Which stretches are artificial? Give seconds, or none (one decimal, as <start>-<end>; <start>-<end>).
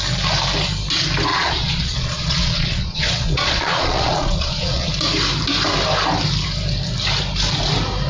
1.3-4.9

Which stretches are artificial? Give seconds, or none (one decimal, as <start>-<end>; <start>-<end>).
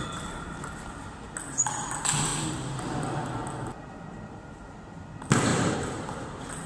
5.5-6.7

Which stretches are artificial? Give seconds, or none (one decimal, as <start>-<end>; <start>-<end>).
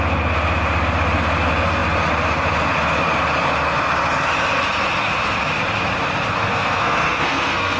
6.5-7.8